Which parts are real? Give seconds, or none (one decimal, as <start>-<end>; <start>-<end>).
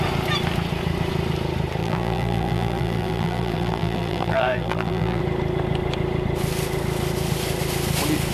0.0-1.8; 5.2-8.3